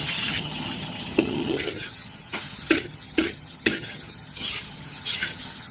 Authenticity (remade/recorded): remade